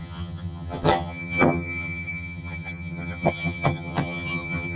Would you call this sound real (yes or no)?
no